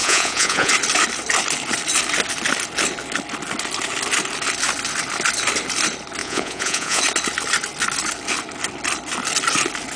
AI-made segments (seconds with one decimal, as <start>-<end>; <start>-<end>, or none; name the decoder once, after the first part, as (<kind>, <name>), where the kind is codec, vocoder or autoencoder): 0.0-0.7 (vocoder, Vocos); 6.2-7.0